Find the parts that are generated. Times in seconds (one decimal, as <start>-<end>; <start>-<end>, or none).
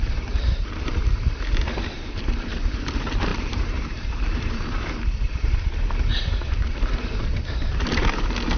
0.0-8.6